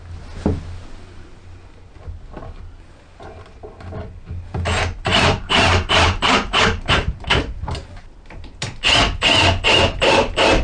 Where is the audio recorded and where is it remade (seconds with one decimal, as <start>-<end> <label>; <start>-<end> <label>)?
0.0-5.1 recorded; 5.1-9.0 remade; 9.0-10.6 recorded